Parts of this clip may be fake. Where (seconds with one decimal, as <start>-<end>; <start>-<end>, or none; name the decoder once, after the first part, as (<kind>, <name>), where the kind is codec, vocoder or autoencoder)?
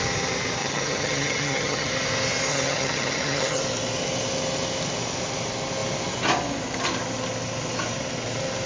0.6-1.9 (vocoder, HiFi-GAN); 2.5-3.6